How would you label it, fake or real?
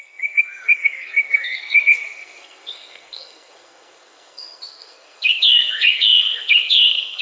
fake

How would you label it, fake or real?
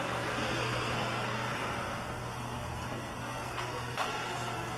fake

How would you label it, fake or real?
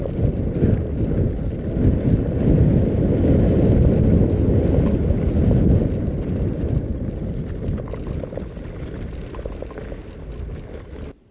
real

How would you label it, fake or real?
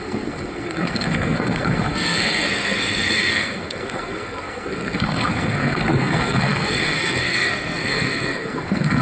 fake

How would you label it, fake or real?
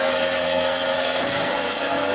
fake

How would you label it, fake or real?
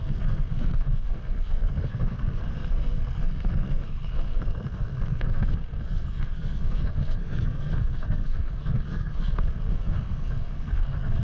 fake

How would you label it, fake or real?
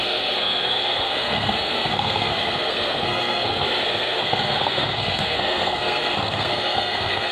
fake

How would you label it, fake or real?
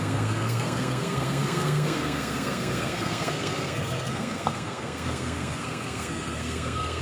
fake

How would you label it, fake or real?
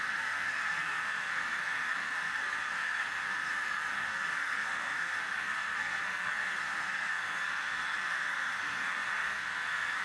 fake